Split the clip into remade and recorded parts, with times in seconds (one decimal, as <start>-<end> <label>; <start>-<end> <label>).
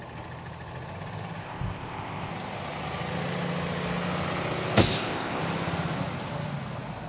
0.0-1.4 recorded; 1.4-2.3 remade; 2.3-4.9 recorded; 4.9-5.4 remade; 5.4-7.1 recorded